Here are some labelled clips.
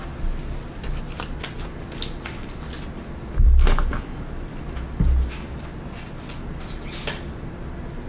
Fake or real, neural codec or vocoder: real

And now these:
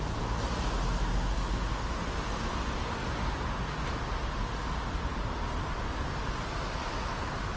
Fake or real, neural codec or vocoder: real